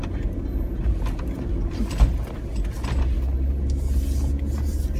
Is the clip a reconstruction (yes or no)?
no